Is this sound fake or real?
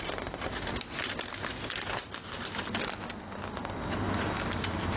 real